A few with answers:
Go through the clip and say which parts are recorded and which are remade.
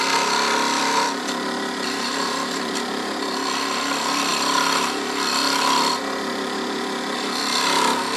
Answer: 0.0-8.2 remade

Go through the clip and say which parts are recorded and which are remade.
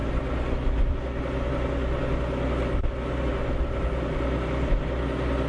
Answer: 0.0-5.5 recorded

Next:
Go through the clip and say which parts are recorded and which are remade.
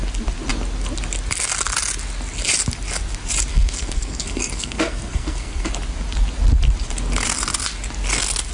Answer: 0.0-3.5 recorded; 3.5-5.7 remade; 5.7-8.5 recorded